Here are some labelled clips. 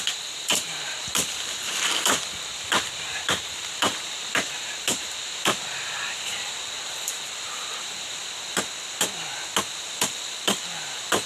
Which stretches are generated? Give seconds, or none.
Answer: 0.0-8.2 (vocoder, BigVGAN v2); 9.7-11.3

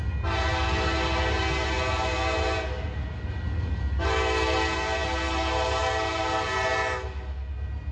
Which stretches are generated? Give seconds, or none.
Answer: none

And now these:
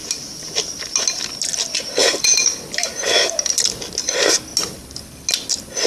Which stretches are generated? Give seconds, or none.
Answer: 2.0-3.3 (vocoder, BigVGAN v2)

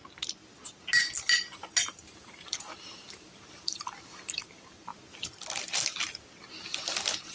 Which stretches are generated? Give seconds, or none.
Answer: 1.8-4.9 (vocoder, BigVGAN v2)

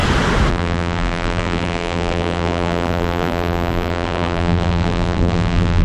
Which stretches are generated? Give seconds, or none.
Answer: 0.5-5.8 (vocoder, BigVGAN v2)

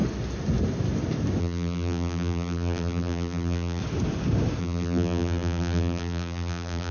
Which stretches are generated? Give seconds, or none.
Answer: 1.4-3.8 (vocoder, BigVGAN v2); 4.6-6.9